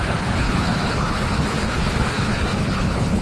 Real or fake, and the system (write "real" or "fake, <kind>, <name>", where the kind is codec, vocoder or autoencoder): fake, codec, HILCodec